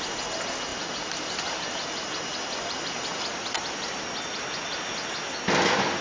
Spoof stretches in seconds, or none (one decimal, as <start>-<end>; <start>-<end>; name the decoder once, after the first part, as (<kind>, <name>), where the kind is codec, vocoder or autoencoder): 0.7-4.0 (vocoder, BigVGAN v2)